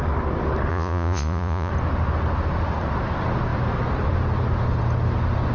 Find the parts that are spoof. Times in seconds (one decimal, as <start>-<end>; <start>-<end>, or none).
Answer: 0.7-1.7

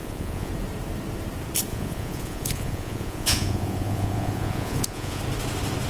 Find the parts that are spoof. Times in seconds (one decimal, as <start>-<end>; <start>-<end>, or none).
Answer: 0.0-0.5; 1.7-5.2

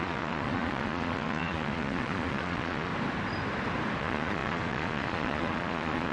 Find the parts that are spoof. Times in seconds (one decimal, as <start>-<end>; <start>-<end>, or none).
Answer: 0.0-2.9; 4.0-6.1

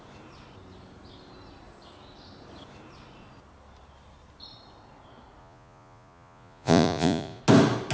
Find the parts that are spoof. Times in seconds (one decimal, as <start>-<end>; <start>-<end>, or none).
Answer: 5.4-7.4

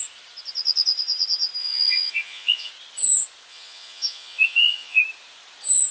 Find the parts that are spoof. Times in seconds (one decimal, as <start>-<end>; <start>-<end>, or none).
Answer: 1.6-2.7; 3.5-5.0

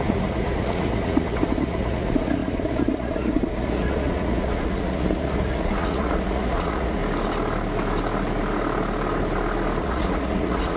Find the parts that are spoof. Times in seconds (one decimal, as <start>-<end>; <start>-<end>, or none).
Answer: 0.0-7.0; 9.8-10.8